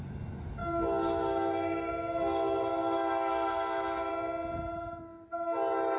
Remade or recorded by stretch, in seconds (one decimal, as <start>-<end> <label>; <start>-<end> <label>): 0.0-0.6 recorded; 0.6-4.1 remade; 4.1-6.0 recorded